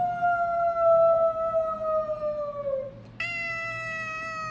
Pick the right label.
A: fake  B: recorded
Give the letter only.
B